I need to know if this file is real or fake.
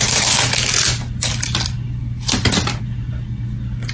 real